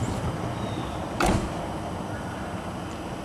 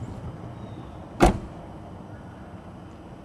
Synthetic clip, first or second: first